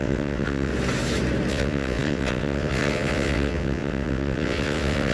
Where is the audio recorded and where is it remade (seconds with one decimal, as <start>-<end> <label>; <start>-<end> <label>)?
0.0-0.7 remade; 0.7-1.5 recorded; 1.5-5.1 remade